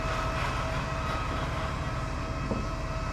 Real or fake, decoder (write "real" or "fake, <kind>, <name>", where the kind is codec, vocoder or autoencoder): real